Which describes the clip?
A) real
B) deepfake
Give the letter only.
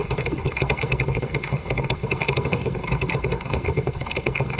B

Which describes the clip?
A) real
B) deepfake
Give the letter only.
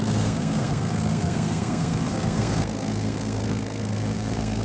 B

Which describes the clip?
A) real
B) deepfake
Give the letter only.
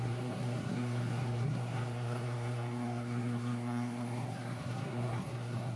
B